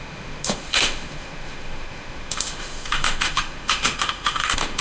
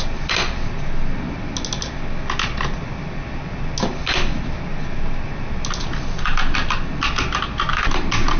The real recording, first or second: second